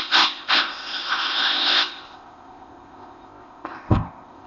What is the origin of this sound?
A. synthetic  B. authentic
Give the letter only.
A